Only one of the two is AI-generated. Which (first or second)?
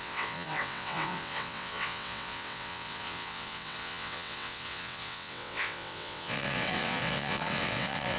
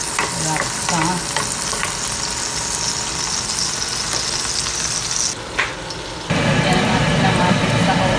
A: first